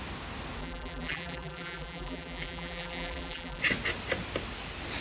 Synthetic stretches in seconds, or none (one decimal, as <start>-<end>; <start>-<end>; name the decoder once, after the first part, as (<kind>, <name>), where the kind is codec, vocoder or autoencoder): 0.6-3.6 (vocoder, BigVGAN v2)